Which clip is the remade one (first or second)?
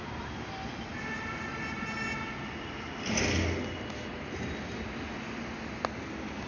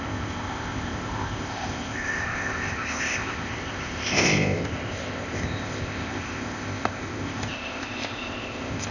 second